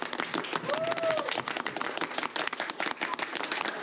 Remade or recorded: recorded